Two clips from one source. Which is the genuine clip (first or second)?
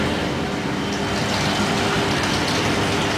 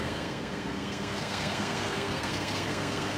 first